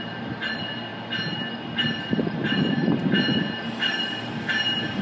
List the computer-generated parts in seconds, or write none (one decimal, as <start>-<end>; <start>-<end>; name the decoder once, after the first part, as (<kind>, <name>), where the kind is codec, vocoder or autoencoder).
0.0-0.9 (vocoder, BigVGAN v2); 1.5-5.0